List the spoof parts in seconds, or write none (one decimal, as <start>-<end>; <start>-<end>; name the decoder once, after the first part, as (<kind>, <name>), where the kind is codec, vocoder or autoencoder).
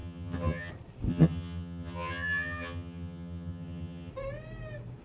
0.0-0.7 (vocoder, HiFi-GAN); 1.1-4.1